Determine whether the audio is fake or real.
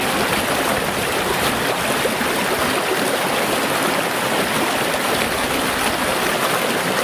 real